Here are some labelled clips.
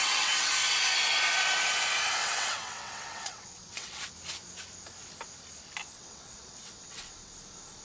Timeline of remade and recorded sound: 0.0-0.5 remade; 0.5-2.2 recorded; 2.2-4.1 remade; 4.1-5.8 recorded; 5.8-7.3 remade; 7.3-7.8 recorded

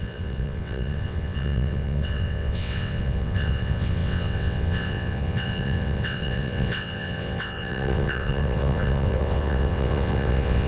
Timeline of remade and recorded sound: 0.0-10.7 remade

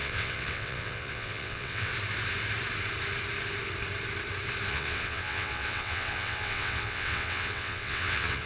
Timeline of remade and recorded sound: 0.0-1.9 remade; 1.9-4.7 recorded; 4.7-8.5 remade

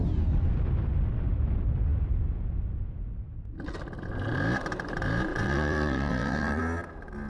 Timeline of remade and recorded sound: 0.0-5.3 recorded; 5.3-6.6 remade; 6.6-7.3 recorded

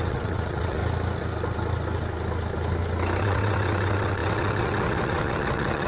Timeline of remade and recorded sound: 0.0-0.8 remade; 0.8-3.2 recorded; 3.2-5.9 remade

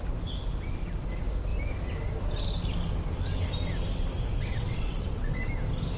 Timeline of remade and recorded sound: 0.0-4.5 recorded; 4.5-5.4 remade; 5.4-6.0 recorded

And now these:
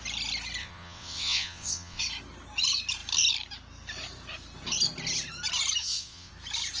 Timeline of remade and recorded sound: 0.0-0.6 recorded; 0.6-2.0 remade; 2.0-5.8 recorded; 5.8-6.3 remade; 6.3-6.8 recorded

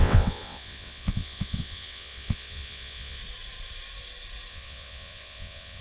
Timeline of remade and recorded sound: 0.0-3.2 remade; 3.2-4.5 recorded; 4.5-5.8 remade